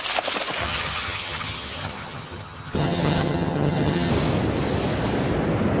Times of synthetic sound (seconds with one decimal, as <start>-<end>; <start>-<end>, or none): 0.6-4.1